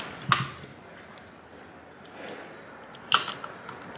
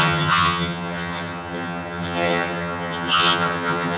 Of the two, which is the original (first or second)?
first